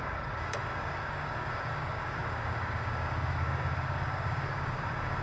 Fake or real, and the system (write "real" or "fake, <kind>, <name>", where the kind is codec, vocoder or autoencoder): fake, codec, DAC